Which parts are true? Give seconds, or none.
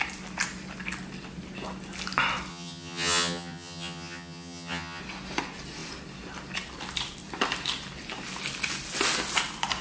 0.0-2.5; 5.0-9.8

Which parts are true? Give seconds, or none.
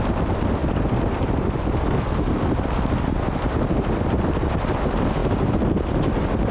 0.0-6.5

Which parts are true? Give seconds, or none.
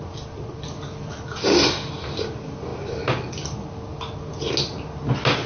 0.0-5.5